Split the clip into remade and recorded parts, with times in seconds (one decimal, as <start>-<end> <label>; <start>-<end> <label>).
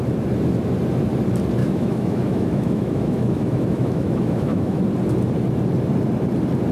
0.0-1.6 recorded; 1.6-4.8 remade; 4.8-6.7 recorded